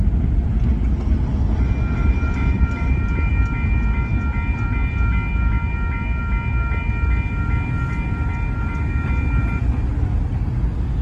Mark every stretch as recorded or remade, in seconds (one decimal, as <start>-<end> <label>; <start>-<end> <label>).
0.0-2.0 recorded; 2.0-3.3 remade; 3.3-11.0 recorded